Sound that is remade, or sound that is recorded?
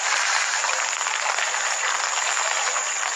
recorded